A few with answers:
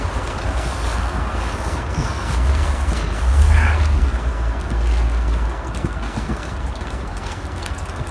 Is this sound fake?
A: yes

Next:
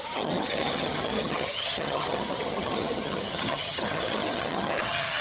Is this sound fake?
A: yes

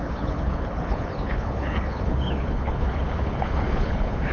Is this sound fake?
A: yes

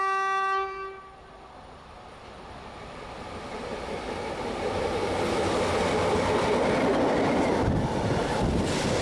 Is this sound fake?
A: no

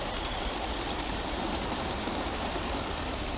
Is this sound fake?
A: yes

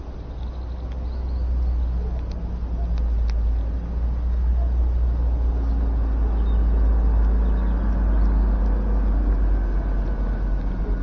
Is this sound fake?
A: no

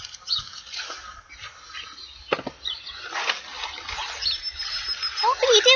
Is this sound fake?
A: no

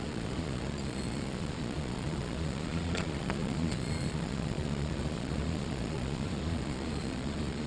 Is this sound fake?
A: yes